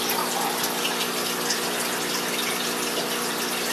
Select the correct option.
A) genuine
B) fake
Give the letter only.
A